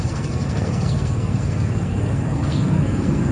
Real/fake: fake